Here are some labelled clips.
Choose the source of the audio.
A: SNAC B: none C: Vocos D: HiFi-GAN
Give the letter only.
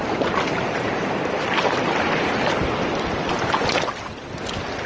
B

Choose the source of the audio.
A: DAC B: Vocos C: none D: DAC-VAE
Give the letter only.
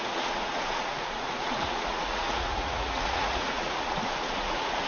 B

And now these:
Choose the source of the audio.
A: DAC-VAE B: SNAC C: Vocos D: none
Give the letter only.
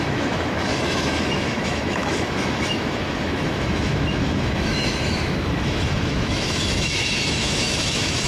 A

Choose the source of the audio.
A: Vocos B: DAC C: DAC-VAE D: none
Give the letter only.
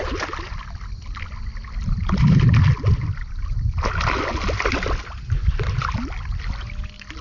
D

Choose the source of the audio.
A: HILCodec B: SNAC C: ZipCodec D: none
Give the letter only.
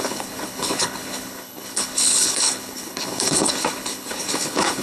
A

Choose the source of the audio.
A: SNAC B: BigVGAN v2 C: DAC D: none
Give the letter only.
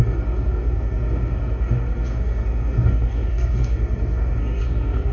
A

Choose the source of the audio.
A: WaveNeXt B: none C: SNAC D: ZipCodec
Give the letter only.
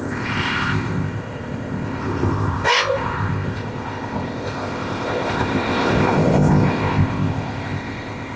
D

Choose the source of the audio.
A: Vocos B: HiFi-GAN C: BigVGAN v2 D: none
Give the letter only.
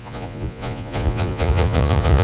A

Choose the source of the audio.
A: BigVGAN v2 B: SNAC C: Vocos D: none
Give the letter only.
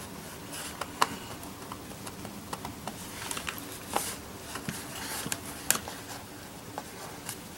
D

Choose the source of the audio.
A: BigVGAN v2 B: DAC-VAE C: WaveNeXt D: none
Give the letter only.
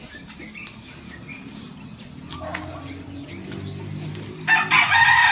D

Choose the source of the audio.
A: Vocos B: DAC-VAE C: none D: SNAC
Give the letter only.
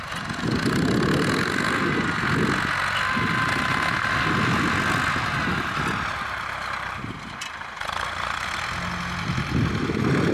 C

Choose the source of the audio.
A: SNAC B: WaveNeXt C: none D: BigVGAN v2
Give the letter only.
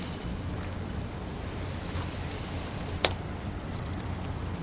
D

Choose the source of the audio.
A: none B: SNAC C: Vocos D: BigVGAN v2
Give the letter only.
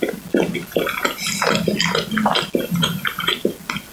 A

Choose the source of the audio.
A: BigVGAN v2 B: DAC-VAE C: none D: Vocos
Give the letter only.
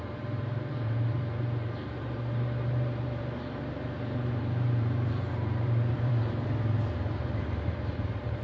A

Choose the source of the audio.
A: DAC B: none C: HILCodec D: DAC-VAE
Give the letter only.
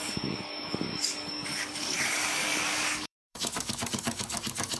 A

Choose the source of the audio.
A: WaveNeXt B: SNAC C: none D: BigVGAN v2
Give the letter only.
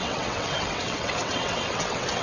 A